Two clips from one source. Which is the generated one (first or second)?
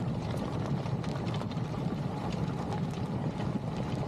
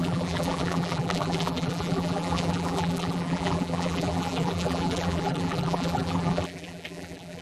second